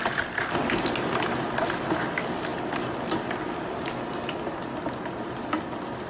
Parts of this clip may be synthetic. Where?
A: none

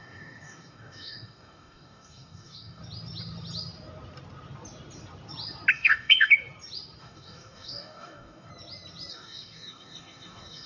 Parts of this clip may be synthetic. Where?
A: 0.0-2.8 (codec, DAC); 5.7-6.3; 7.0-8.5; 9.1-10.7

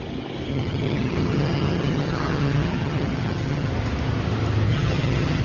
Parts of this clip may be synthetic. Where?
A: 0.5-3.7 (vocoder, HiFi-GAN); 4.7-5.4

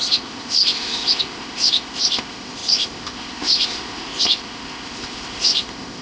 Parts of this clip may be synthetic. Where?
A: 0.0-6.0 (codec, ZipCodec)

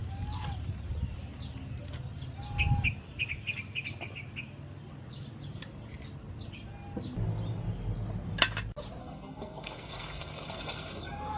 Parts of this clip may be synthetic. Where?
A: 9.0-11.4 (codec, SNAC)

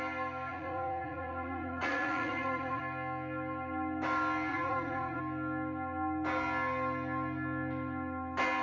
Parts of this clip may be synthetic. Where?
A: 0.5-2.8 (vocoder, Vocos); 4.5-5.2

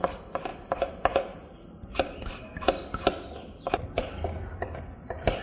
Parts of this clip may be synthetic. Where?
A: none

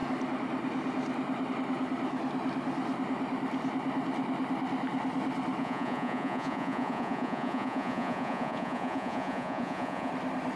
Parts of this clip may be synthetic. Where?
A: 5.6-10.1 (vocoder, Vocos)